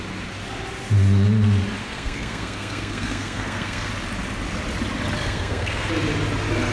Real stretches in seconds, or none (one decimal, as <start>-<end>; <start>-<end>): 0.0-1.8; 3.9-5.2; 5.9-6.7